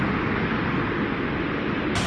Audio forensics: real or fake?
real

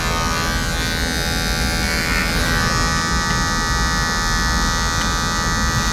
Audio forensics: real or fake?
real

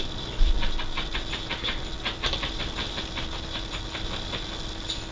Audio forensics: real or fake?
real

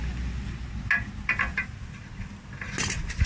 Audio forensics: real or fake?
real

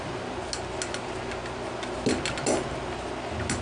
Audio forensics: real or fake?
real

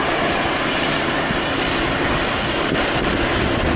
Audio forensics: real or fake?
real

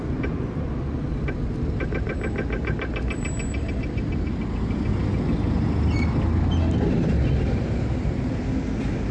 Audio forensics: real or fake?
real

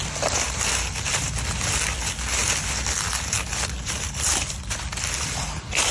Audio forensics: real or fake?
real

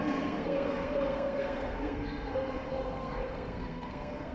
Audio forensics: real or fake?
fake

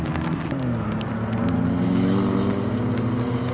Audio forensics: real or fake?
real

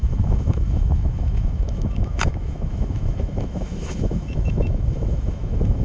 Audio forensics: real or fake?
fake